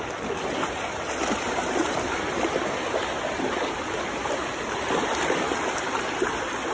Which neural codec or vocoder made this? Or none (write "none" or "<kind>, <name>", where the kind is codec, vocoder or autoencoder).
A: none